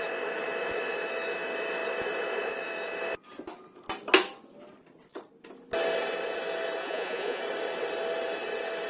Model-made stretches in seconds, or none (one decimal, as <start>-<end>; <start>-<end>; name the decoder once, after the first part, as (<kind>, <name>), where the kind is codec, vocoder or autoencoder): 6.8-7.4 (vocoder, Vocos)